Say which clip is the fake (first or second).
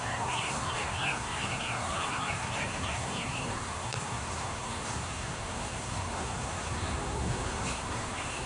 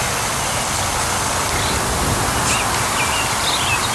first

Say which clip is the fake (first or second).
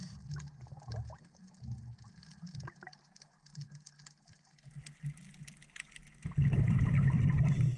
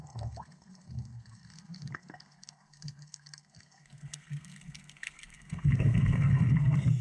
second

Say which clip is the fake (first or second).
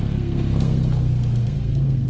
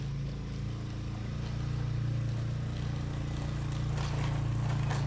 first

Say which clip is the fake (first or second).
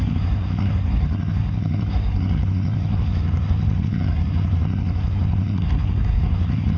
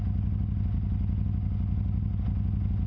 first